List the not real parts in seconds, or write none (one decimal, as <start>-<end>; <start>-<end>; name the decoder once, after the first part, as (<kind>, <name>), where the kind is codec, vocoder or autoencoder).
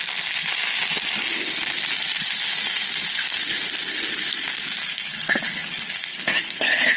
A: 4.8-7.0 (codec, HILCodec)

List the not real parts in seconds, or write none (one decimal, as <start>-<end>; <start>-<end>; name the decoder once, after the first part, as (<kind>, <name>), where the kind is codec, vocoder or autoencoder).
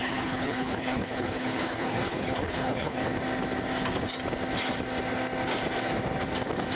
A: 0.0-3.0 (codec, HILCodec)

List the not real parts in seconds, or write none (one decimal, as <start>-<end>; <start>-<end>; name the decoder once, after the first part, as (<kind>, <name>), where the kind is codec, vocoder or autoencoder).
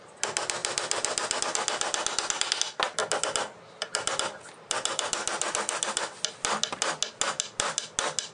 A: none